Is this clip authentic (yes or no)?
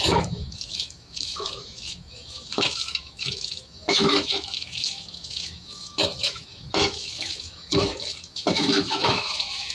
no